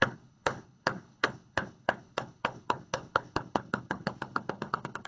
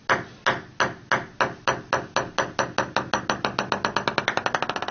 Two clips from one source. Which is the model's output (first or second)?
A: first